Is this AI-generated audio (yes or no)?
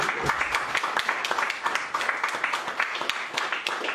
no